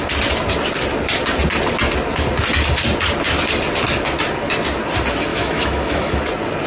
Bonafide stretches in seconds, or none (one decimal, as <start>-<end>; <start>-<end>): 0.0-5.3; 6.2-6.7